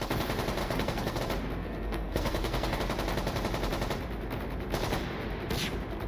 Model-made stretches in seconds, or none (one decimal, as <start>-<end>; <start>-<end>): 0.6-1.2; 1.6-2.8